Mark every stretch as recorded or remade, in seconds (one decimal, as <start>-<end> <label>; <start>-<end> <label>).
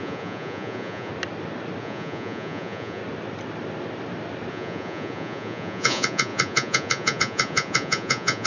0.0-1.1 remade; 1.1-1.8 recorded; 1.8-3.0 remade; 3.0-4.5 recorded; 4.5-8.5 remade